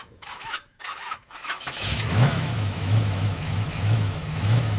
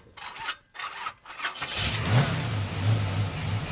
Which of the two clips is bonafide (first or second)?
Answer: second